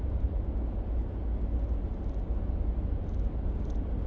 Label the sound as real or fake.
real